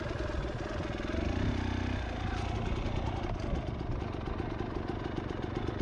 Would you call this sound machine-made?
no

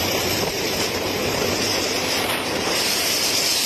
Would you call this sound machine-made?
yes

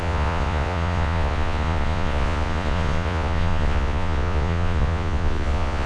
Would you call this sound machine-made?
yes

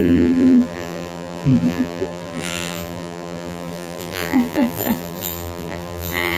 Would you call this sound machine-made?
yes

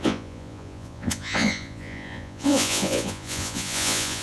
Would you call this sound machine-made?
yes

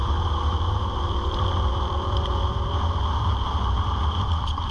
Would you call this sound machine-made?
yes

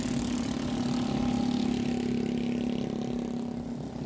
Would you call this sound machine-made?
no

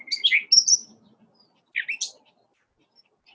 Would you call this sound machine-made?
no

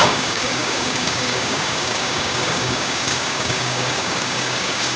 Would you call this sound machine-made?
yes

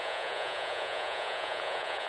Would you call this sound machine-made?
yes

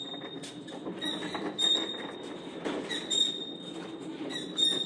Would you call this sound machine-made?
no